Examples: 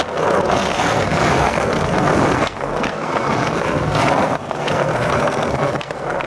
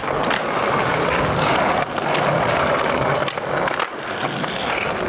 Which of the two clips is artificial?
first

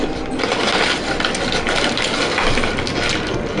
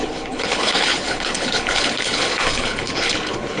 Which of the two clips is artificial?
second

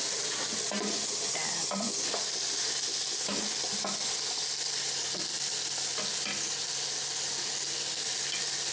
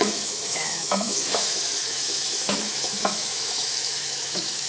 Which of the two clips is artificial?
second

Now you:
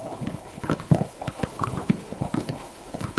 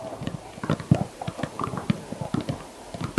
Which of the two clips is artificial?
first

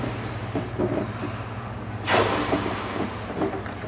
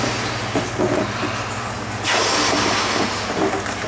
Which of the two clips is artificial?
first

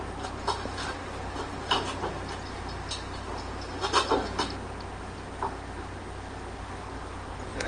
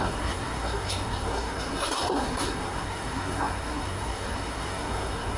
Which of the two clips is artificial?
second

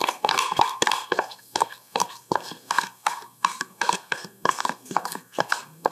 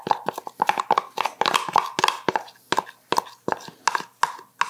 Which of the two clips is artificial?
first